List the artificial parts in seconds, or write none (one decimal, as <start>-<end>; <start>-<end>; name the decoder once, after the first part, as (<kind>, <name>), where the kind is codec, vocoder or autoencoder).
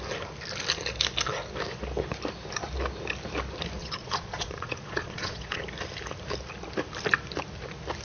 3.8-5.6 (vocoder, Vocos)